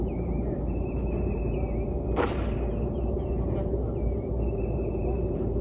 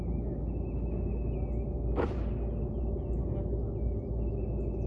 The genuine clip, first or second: second